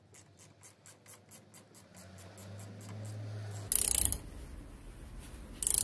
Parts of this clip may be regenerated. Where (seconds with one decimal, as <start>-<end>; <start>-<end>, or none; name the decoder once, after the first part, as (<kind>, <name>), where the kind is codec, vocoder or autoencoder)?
none